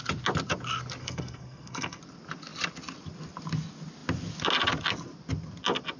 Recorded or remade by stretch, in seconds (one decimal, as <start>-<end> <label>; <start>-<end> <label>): 0.0-1.0 recorded; 1.0-2.0 remade; 2.0-6.0 recorded